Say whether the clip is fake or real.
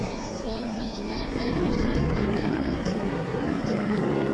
fake